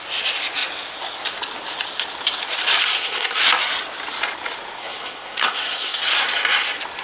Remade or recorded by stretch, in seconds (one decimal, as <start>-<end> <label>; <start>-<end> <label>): 0.0-2.8 recorded; 2.8-3.4 remade; 3.4-4.8 recorded; 4.8-6.0 remade; 6.0-7.0 recorded